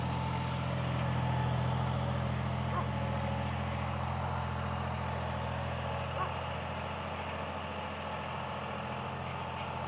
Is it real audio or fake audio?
real